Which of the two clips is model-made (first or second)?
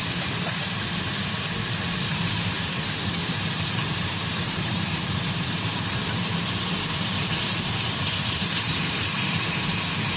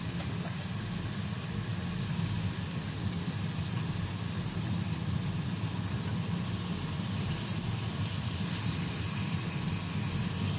first